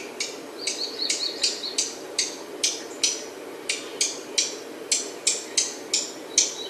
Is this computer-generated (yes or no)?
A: no